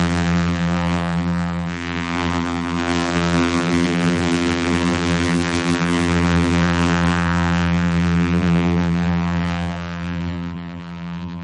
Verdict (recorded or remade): remade